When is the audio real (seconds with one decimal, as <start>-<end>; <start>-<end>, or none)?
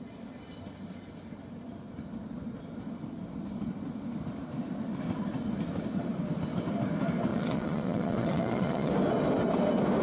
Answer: 0.0-7.3; 8.9-10.0